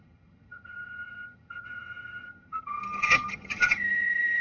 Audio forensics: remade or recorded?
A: remade